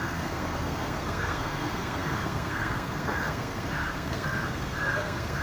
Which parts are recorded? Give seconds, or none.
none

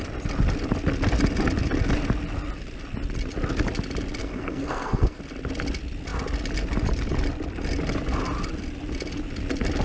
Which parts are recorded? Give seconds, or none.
0.0-4.2; 5.2-9.8

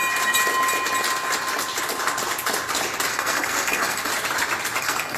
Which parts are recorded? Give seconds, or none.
0.0-3.1; 4.1-4.8

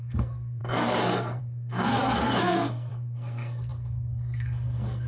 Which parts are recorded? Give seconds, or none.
none

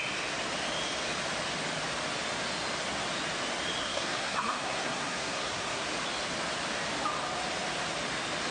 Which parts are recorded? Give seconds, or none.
0.0-3.8; 5.9-8.5

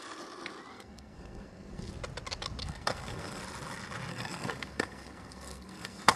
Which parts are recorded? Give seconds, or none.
0.0-0.7; 1.9-2.6; 3.4-4.1